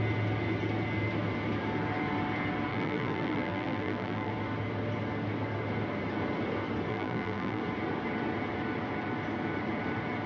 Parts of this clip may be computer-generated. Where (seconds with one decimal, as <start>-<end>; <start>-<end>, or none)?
2.7-4.3; 6.9-7.6